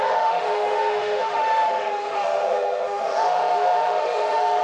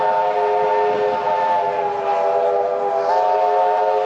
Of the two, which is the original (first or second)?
second